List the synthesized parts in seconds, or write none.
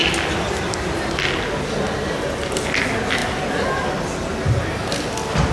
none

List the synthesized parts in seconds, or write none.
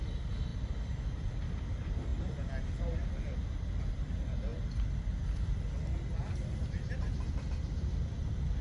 none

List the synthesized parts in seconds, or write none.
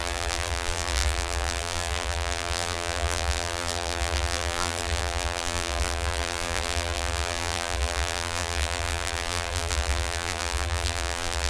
0.0-11.5 (vocoder, BigVGAN v2)